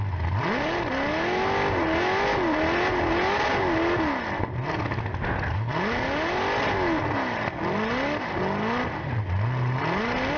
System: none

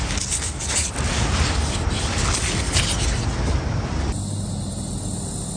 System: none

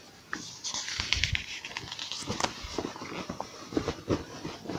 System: none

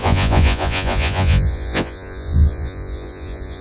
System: vocoder, Vocos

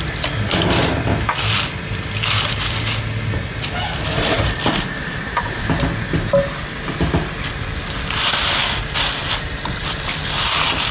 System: none